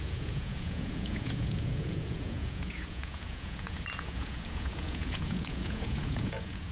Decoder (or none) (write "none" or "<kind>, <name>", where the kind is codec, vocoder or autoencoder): vocoder, Vocos